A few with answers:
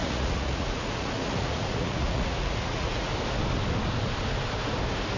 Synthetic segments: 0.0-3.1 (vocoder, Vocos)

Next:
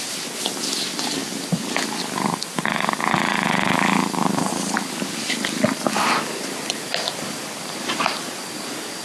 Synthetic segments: none

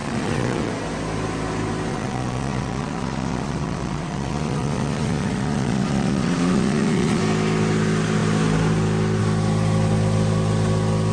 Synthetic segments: 0.0-0.7 (vocoder, Vocos); 1.9-7.2

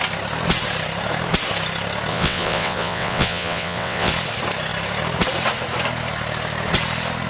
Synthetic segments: 2.1-4.1 (vocoder, WaveNeXt)

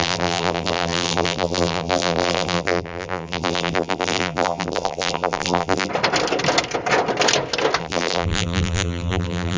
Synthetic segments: 0.0-5.9 (vocoder, BigVGAN v2); 7.8-9.6

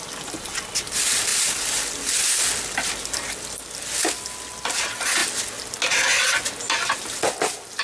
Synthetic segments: none

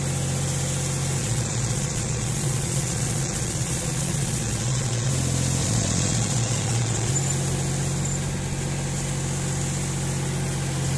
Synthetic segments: 1.2-5.1 (vocoder, Vocos); 5.6-7.1

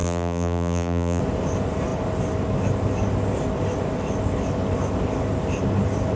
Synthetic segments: 0.0-1.2 (vocoder, BigVGAN v2)